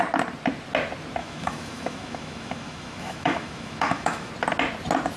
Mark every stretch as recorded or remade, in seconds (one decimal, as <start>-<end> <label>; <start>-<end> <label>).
0.0-1.2 recorded; 1.2-4.3 remade; 4.3-5.2 recorded